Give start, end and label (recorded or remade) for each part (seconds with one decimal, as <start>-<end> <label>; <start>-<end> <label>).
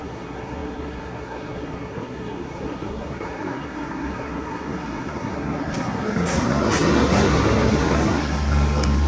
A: 0.0-9.1 remade